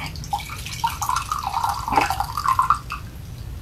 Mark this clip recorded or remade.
recorded